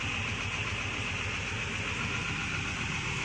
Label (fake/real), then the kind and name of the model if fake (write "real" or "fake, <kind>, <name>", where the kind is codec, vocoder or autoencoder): real